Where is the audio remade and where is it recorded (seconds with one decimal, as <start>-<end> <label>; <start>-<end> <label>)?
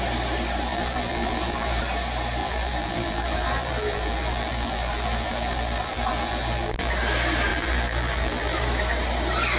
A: 0.0-0.7 recorded; 0.7-1.8 remade; 1.8-2.4 recorded; 2.4-6.9 remade; 6.9-7.5 recorded; 7.5-8.6 remade; 8.6-9.6 recorded